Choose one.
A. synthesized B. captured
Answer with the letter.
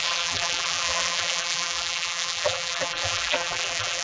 A